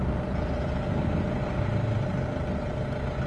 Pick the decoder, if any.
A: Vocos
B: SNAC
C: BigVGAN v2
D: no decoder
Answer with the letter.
D